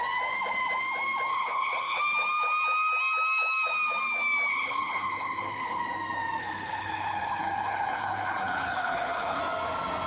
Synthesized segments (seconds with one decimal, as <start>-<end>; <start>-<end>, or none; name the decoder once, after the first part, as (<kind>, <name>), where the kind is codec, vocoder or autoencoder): 1.3-2.0 (codec, HILCodec); 4.5-5.8; 6.4-9.4